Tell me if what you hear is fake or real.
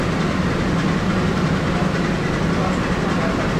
real